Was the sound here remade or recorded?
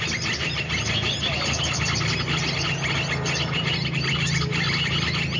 recorded